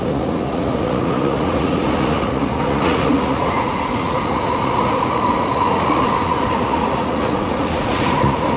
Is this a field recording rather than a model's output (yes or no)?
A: no